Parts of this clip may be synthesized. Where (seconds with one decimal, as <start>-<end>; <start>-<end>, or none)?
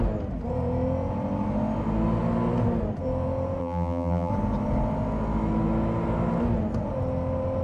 3.6-4.3